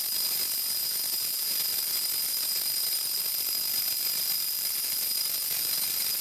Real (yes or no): yes